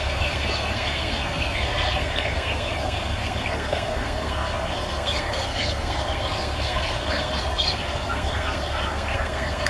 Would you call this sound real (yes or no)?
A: no